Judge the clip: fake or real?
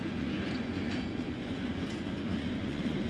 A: fake